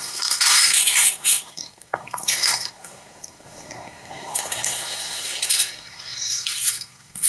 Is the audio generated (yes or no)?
yes